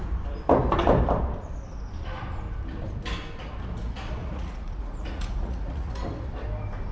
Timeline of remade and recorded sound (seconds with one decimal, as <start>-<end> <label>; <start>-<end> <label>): 0.0-4.2 recorded; 4.2-5.9 remade; 5.9-6.9 recorded